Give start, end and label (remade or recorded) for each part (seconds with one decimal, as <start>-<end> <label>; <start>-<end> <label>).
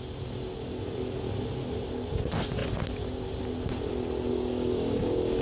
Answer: 0.0-4.3 recorded; 4.3-5.4 remade